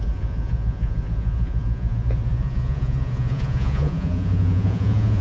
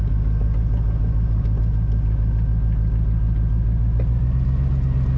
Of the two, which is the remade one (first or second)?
first